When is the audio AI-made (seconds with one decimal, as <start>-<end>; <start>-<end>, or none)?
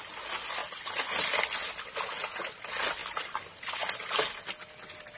0.6-1.8